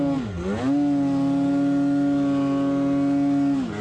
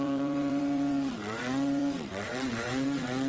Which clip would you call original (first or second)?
first